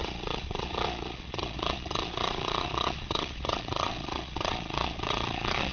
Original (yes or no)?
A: no